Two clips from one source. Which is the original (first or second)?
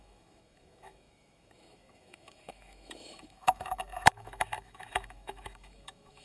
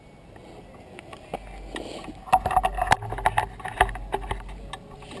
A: second